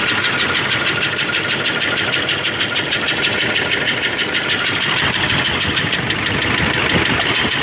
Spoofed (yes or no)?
no